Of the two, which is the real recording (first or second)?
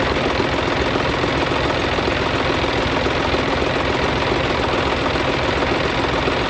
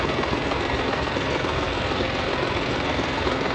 first